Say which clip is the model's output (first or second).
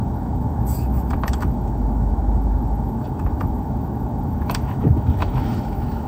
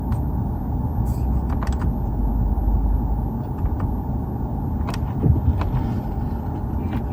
first